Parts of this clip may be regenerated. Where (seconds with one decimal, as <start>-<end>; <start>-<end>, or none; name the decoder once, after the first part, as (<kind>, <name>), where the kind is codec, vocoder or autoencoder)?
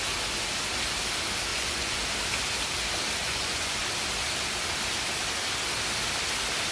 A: 1.5-2.0 (vocoder, Vocos); 3.2-3.8